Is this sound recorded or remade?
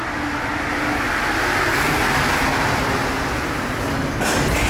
recorded